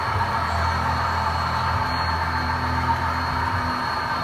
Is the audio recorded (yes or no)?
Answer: yes